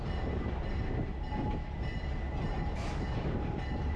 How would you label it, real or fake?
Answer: real